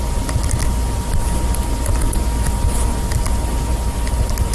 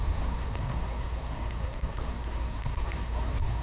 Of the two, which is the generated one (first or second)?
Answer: second